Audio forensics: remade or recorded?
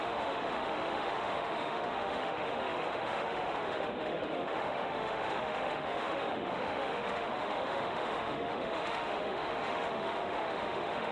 remade